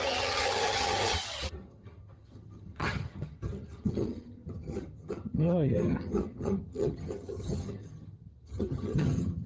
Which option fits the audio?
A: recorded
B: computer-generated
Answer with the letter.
B